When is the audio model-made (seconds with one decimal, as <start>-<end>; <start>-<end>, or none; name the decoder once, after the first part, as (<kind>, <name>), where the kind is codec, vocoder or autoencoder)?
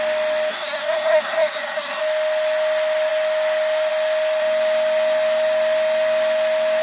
0.5-2.0 (codec, SNAC)